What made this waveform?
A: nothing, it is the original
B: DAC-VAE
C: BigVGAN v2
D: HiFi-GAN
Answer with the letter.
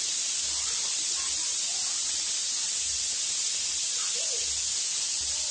A